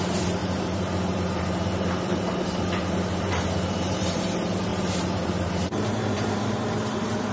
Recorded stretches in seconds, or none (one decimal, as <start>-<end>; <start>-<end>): 0.0-0.4; 4.2-4.7